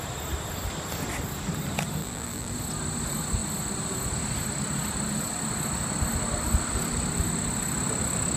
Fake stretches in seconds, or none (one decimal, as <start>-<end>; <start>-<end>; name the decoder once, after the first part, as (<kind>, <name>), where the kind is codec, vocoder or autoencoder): 2.0-2.5 (vocoder, BigVGAN v2)